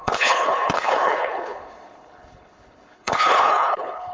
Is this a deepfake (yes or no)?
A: yes